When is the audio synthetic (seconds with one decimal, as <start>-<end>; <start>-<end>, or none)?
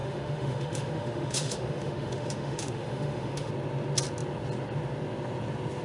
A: 0.0-3.5